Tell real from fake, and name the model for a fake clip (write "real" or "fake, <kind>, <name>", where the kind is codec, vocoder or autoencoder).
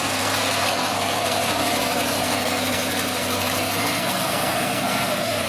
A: fake, codec, SNAC